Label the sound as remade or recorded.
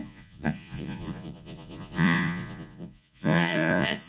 remade